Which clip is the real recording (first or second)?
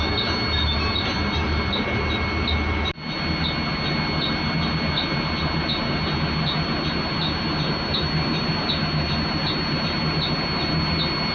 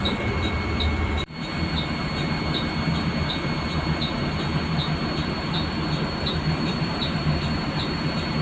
first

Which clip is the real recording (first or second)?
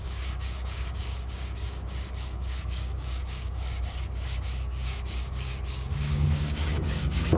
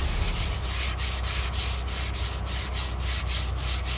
second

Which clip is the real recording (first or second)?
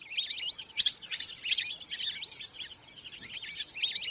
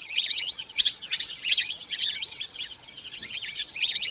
first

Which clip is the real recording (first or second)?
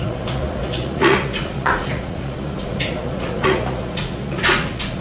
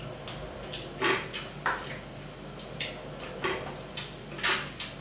second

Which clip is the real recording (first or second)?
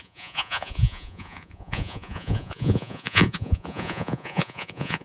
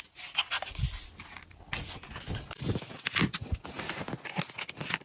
second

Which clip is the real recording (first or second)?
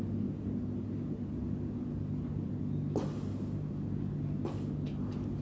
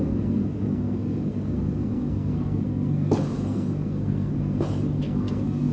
first